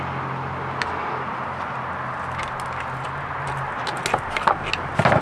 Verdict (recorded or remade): recorded